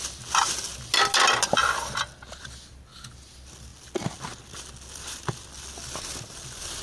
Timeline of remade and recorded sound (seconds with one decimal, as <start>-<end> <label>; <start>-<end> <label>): 0.0-6.8 recorded